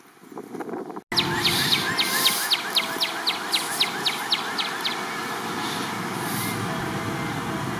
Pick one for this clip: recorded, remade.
recorded